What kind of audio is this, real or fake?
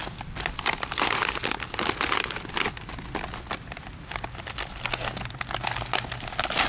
real